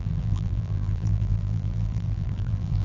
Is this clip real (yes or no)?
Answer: no